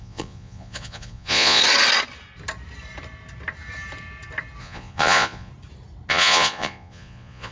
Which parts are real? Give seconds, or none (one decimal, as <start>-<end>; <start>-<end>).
1.6-4.6; 5.5-6.1